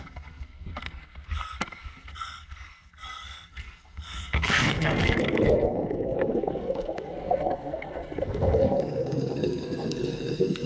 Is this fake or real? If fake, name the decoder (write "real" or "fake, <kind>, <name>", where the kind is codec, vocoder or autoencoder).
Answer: fake, codec, SNAC